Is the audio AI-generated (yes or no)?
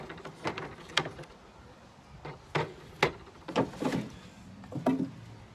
no